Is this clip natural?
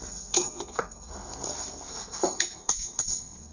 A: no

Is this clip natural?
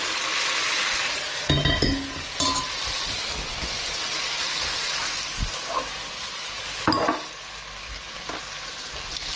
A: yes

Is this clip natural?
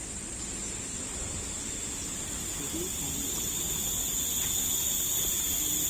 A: yes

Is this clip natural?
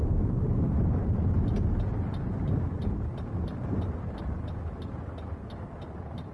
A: yes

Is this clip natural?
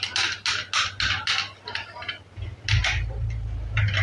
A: yes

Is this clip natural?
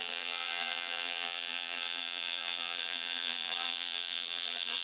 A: no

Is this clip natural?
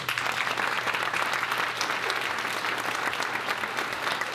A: yes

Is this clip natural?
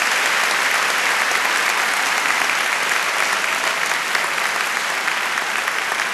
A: yes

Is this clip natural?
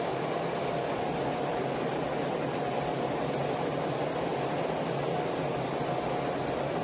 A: yes